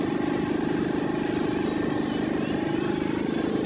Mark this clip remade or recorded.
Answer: recorded